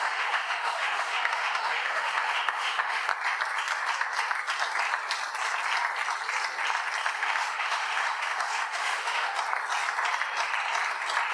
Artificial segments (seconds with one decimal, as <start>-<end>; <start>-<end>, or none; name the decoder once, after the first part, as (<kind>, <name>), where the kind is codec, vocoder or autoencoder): 0.0-3.1 (autoencoder, DAC-VAE); 7.1-9.3